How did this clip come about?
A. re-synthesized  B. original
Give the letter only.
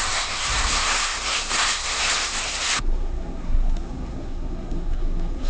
A